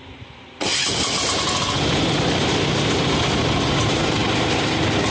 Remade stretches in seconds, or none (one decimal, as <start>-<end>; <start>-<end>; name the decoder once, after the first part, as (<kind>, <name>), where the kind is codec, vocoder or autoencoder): 0.0-0.7 (vocoder, BigVGAN v2); 1.9-5.1